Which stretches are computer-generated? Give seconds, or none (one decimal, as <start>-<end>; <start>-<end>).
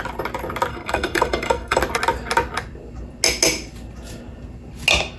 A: 0.7-1.8